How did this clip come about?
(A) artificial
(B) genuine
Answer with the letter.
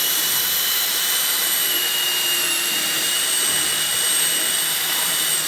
A